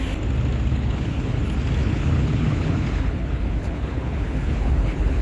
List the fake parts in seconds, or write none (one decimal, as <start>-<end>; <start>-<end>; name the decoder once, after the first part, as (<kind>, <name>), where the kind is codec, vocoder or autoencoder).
0.7-1.4 (codec, HILCodec); 1.8-5.2